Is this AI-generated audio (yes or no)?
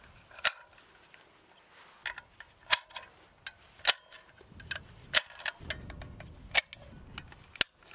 no